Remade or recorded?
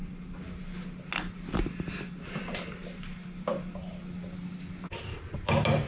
recorded